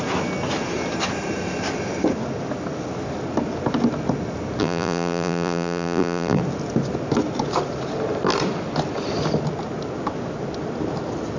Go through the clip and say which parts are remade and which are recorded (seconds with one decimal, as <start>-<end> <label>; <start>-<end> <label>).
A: 0.0-4.6 recorded; 4.6-6.4 remade; 6.4-11.4 recorded